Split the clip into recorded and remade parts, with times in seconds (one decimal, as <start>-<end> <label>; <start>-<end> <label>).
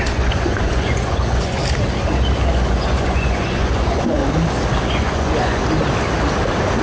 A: 0.0-1.6 remade; 1.6-2.5 recorded; 2.5-4.2 remade; 4.2-4.9 recorded; 4.9-5.6 remade; 5.6-6.8 recorded